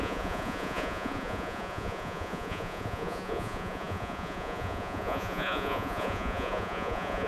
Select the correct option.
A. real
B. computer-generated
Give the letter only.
B